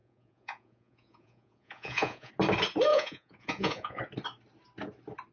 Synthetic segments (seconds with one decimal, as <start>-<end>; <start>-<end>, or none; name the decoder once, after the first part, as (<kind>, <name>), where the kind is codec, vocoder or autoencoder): 0.0-2.3 (vocoder, Vocos); 2.9-4.0